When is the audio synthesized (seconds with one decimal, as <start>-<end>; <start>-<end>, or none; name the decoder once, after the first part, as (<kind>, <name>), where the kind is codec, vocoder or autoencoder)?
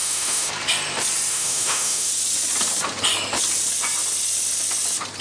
0.0-0.5 (autoencoder, DAC-VAE); 1.3-2.1